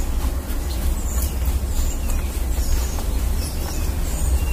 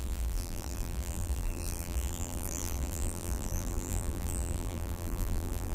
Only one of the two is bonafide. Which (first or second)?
first